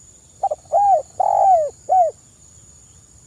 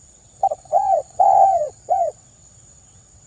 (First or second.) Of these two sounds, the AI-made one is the second